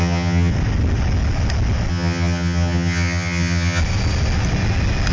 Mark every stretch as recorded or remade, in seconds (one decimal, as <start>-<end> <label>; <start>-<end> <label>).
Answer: 0.0-0.5 remade; 0.5-1.9 recorded; 1.9-3.8 remade; 3.8-5.1 recorded